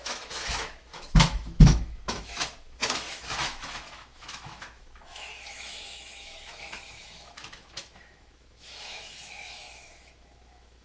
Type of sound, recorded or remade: remade